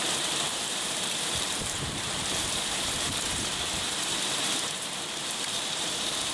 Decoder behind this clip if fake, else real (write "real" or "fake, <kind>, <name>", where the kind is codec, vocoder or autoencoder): fake, vocoder, BigVGAN v2